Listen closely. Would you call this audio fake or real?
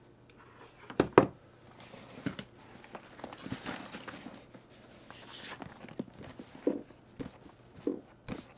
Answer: real